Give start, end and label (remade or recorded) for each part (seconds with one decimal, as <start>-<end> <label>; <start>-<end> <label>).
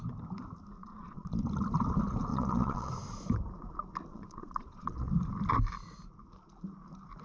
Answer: 0.0-0.8 recorded; 0.8-1.3 remade; 1.3-2.3 recorded; 2.3-2.9 remade; 2.9-4.1 recorded; 4.1-5.1 remade; 5.1-7.2 recorded